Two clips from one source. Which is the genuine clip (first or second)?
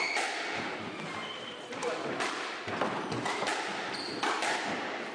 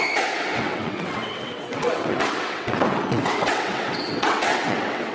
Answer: first